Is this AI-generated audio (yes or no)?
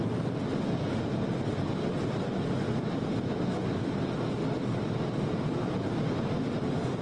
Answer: no